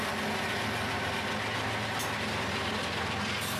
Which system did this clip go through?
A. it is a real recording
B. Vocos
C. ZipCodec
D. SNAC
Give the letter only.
A